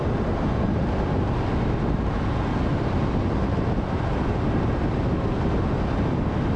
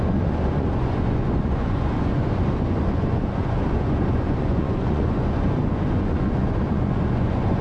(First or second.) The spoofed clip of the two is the second